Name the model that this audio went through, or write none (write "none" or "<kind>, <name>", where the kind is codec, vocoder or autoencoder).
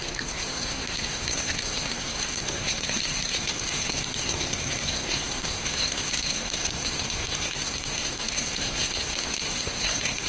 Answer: codec, SNAC